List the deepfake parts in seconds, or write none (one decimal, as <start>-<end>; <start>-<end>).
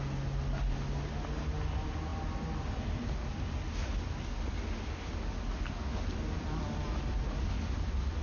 none